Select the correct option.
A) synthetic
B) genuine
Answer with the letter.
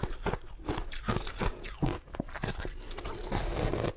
B